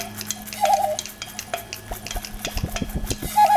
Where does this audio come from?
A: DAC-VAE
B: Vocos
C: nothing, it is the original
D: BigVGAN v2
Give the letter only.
C